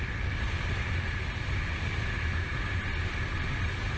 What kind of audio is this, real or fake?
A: real